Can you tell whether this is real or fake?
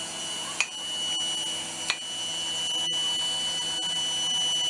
real